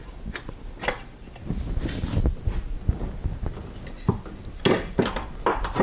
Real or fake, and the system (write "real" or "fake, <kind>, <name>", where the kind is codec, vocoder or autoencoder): real